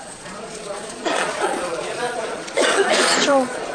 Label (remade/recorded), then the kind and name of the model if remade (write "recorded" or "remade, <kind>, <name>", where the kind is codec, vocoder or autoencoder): remade, vocoder, Vocos